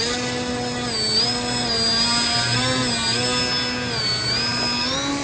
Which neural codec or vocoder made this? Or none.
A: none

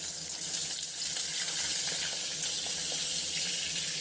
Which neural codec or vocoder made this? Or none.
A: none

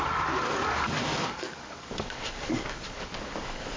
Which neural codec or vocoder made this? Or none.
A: codec, DAC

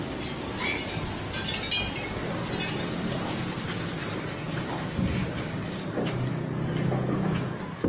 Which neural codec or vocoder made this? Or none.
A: none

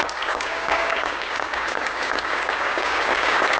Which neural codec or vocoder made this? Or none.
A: codec, DAC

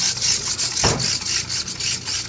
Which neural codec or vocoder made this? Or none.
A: none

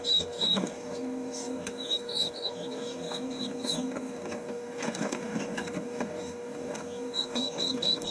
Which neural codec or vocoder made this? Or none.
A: codec, DAC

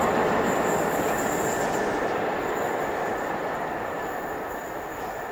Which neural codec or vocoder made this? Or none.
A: none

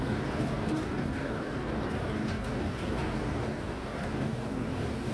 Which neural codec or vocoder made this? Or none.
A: codec, DAC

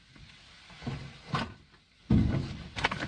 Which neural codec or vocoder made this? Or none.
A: none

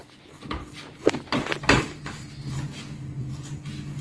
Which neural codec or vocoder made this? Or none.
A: none